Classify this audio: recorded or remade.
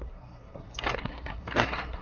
remade